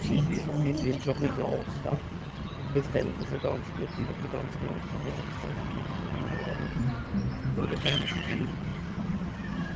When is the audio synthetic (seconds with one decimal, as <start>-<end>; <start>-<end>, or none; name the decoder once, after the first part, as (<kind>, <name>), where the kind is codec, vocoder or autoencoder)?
0.0-6.8 (vocoder, HiFi-GAN); 7.6-9.8